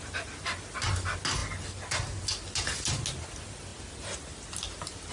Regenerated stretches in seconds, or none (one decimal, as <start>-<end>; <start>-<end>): none